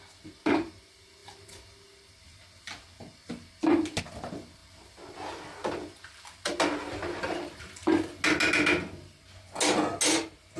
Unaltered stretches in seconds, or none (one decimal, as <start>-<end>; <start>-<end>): 0.0-10.6